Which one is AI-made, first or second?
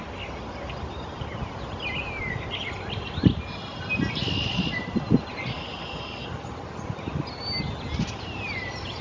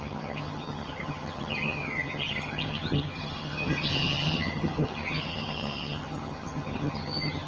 second